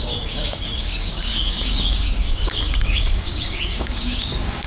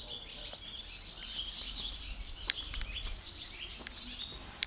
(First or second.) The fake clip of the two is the first